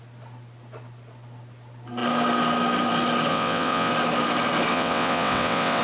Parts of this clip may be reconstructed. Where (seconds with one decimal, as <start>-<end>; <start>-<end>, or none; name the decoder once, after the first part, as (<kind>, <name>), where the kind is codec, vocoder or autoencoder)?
3.3-3.9 (vocoder, WaveNeXt); 4.7-5.8